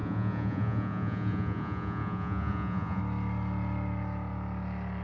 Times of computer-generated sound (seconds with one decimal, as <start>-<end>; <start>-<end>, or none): 0.0-3.0